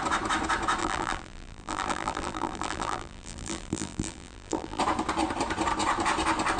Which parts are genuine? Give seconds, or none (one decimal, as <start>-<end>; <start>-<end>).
0.0-0.8; 4.8-6.6